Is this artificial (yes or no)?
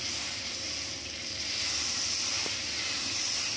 no